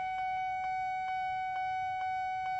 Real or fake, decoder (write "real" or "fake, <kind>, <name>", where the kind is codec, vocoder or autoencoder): real